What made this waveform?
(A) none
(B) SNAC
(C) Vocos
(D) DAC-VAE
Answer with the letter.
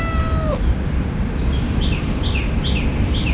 A